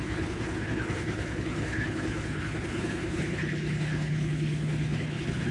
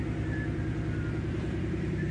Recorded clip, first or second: second